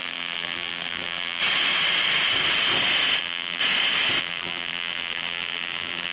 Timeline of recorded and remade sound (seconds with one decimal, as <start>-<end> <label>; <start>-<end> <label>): 0.0-1.4 remade; 1.4-3.2 recorded; 3.2-3.6 remade; 3.6-4.2 recorded; 4.2-6.1 remade